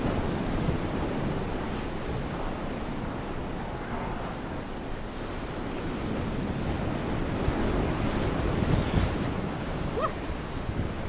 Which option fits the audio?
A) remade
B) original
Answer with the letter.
B